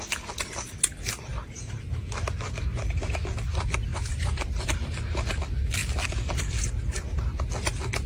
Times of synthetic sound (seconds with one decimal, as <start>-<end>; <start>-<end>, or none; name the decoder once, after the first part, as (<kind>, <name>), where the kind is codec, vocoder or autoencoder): 1.3-2.0 (vocoder, BigVGAN v2); 3.9-4.6